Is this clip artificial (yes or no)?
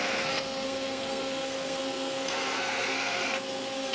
yes